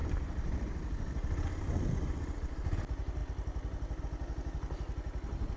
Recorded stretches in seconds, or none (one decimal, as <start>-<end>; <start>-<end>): 1.8-5.6